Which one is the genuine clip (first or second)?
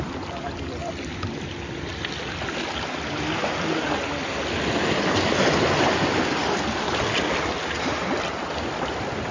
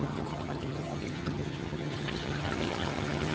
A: first